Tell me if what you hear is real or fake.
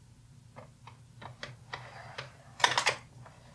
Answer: real